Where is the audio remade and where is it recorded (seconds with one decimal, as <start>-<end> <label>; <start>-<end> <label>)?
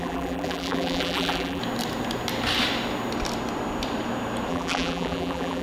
0.0-1.6 remade; 1.6-4.5 recorded; 4.5-5.6 remade